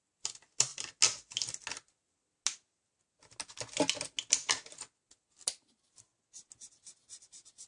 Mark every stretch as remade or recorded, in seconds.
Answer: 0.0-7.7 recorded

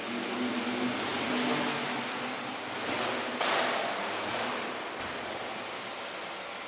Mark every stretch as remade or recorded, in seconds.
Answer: 0.0-6.7 recorded